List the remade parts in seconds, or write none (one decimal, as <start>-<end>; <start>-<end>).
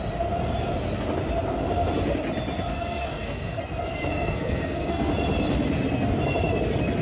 2.7-3.6; 4.1-5.1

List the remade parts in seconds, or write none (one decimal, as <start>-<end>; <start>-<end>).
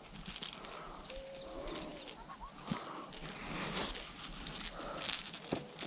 none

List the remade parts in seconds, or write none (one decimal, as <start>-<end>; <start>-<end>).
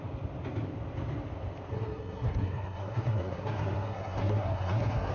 1.7-5.1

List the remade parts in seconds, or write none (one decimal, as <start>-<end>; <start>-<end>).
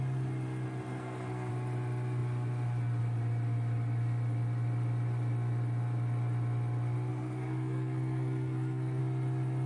0.9-1.5; 7.1-9.0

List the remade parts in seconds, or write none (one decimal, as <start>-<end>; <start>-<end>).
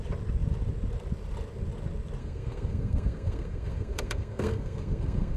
2.2-5.4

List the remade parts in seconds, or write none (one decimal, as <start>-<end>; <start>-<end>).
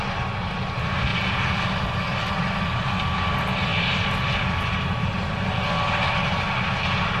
none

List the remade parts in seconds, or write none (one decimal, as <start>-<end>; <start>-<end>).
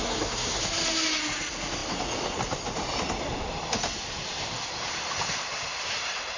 0.0-0.6